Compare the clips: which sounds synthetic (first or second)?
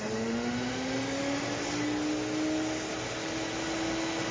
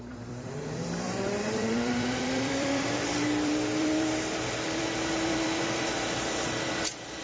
second